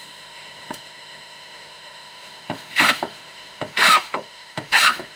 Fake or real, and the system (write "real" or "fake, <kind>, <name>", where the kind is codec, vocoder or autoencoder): fake, autoencoder, DAC-VAE